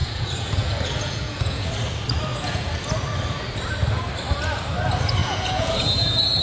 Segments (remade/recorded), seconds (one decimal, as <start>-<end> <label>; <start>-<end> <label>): 0.0-1.7 remade; 1.7-2.3 recorded; 2.3-2.8 remade; 2.8-5.2 recorded; 5.2-6.4 remade